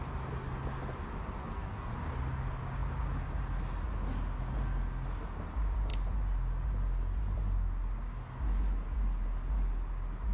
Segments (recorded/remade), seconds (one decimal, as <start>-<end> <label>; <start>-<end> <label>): 0.0-1.4 recorded; 1.4-1.9 remade; 1.9-10.3 recorded